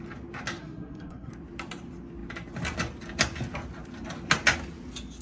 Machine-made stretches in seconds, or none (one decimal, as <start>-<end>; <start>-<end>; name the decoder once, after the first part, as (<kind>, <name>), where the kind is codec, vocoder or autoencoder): 0.6-1.3 (codec, SNAC)